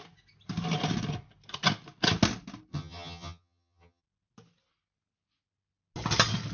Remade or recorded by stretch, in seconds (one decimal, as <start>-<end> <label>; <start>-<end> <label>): 0.0-2.7 recorded; 2.7-4.0 remade; 4.0-6.5 recorded